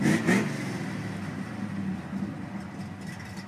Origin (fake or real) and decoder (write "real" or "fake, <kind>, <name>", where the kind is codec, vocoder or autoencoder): real